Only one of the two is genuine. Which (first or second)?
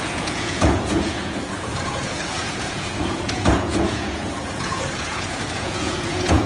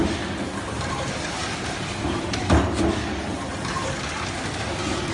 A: second